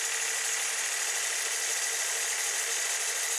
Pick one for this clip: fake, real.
real